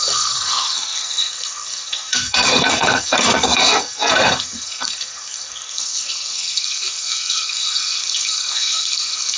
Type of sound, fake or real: fake